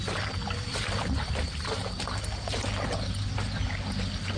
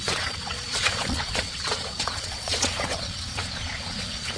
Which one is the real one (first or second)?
first